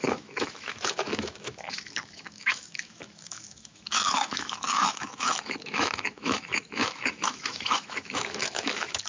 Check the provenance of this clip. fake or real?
fake